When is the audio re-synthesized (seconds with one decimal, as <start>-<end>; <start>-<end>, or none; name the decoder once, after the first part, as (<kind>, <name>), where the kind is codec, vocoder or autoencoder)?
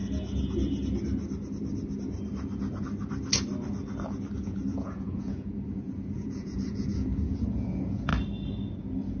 4.4-8.1 (vocoder, Vocos); 8.7-9.2